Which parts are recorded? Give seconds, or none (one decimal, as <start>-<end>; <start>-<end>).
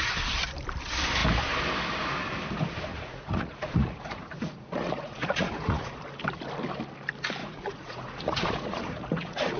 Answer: 0.0-2.9; 6.0-7.4